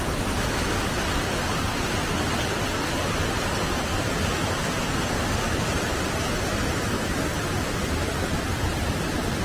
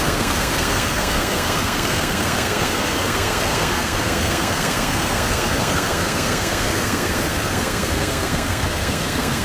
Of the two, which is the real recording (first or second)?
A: first